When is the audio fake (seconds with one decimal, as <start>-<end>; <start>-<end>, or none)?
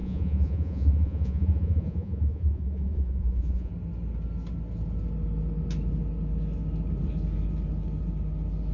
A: 0.0-3.7